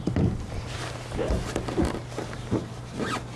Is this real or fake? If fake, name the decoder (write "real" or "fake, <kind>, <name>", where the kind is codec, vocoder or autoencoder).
real